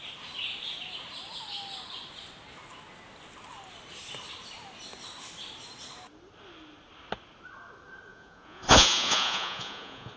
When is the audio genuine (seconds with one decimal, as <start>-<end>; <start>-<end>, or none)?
0.0-8.1